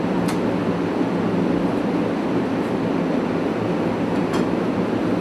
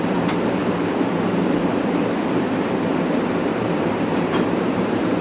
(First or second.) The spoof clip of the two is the second